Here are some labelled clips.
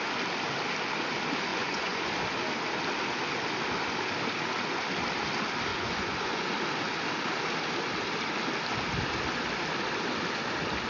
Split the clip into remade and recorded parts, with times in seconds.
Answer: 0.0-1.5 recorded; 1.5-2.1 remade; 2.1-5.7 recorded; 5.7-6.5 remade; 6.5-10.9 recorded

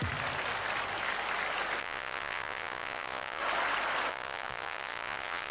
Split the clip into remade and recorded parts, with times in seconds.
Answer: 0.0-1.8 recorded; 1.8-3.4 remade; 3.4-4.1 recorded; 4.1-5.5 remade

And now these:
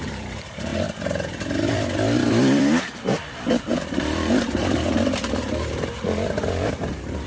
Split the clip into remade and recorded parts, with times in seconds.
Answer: 0.0-0.7 remade; 0.7-1.7 recorded; 1.7-7.3 remade